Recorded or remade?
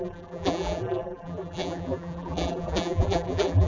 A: remade